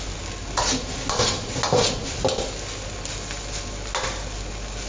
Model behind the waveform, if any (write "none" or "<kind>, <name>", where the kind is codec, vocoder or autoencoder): none